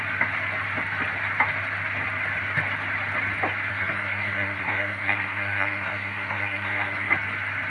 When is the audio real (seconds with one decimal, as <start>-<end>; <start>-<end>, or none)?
0.0-3.7; 7.1-7.7